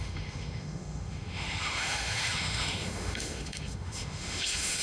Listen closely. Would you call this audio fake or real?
fake